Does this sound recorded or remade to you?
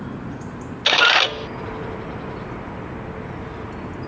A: recorded